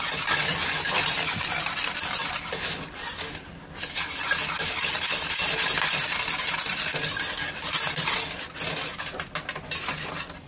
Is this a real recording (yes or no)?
yes